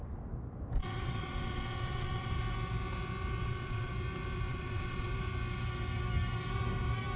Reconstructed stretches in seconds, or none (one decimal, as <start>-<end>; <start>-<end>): 0.8-2.4; 3.4-3.9; 4.5-5.1

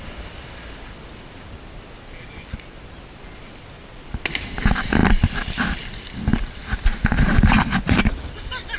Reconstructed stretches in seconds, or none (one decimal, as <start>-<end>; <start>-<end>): none

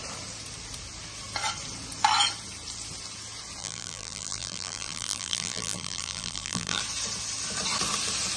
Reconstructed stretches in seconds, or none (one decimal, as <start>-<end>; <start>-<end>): 3.6-6.8